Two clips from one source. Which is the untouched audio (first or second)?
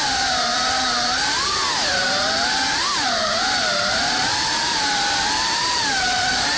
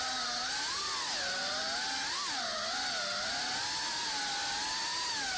second